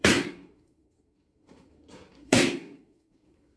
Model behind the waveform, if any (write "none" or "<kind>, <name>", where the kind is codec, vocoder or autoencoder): codec, SNAC